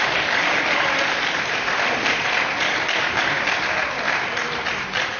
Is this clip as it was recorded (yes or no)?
no